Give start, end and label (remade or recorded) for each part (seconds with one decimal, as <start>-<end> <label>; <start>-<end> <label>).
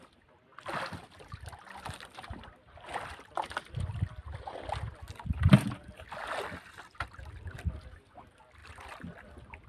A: 0.0-9.7 recorded